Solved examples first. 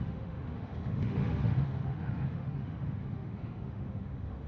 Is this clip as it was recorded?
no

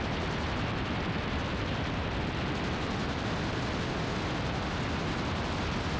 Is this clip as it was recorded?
yes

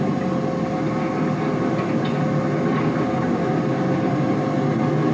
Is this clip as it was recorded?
yes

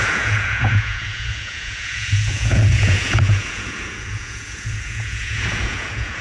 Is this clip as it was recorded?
no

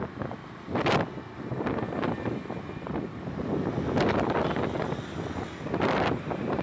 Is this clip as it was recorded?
yes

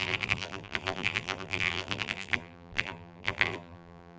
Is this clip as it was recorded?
no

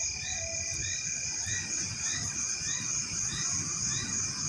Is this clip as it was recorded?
yes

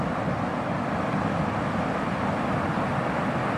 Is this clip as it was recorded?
yes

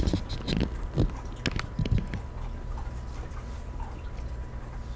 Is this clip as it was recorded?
yes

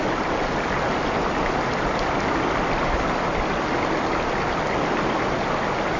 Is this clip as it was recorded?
yes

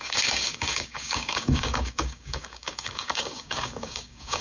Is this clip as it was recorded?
no